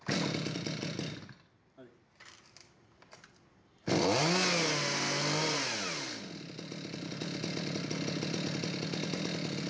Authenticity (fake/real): real